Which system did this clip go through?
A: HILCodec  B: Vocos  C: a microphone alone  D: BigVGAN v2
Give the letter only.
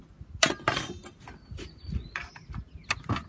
C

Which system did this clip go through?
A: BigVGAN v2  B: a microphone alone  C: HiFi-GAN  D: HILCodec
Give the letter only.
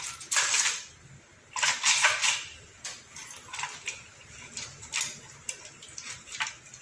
B